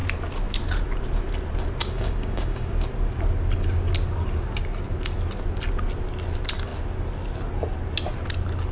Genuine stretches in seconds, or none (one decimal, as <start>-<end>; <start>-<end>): 0.0-1.8; 2.7-8.7

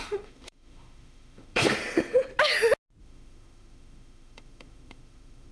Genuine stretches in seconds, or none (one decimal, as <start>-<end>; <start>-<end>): 1.8-3.0

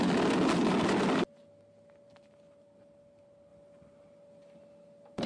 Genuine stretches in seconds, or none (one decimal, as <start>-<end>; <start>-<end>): 0.0-5.3

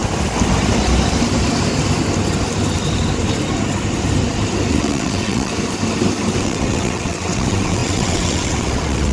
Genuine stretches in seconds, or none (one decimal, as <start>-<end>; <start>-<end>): 0.0-4.7; 5.5-6.4